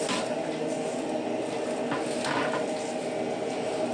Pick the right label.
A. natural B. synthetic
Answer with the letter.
A